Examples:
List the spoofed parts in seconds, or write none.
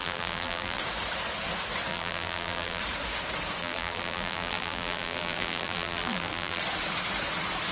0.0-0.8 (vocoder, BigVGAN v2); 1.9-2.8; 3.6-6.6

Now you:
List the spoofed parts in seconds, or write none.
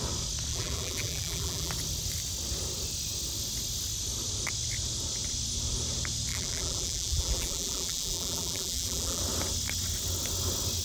0.5-1.7 (vocoder, BigVGAN v2); 6.3-9.2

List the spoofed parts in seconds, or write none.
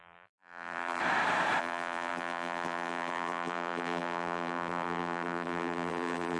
0.0-1.0 (vocoder, BigVGAN v2); 1.6-6.4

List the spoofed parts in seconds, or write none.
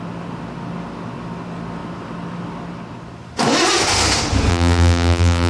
4.5-5.5 (vocoder, BigVGAN v2)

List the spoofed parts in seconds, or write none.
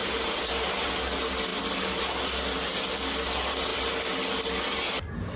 0.0-0.9 (vocoder, BigVGAN v2)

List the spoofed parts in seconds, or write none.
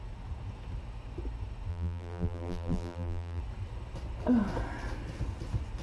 1.7-3.4 (vocoder, BigVGAN v2)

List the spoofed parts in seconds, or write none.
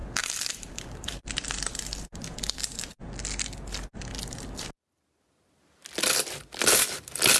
0.0-1.1 (vocoder, BigVGAN v2)